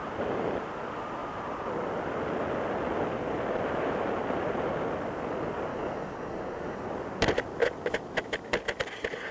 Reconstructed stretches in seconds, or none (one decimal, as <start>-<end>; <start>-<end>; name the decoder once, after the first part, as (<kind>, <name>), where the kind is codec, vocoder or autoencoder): 5.7-6.9 (codec, DAC)